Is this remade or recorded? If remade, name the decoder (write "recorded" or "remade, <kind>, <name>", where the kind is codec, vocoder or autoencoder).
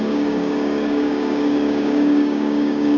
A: remade, codec, DAC